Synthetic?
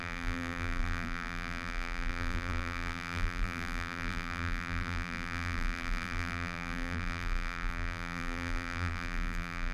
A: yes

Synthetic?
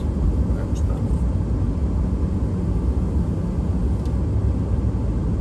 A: no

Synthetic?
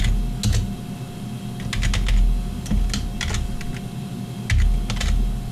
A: no